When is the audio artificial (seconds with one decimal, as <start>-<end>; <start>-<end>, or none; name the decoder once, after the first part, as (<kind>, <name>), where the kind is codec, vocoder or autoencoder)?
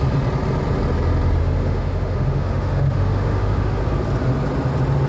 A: 1.4-3.8 (autoencoder, DAC-VAE)